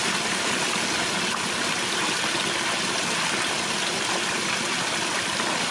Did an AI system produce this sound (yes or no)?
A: no